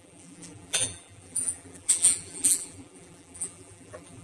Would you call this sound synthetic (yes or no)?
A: yes